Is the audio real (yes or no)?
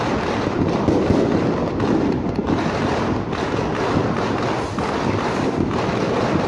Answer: yes